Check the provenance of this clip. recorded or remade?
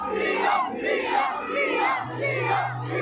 recorded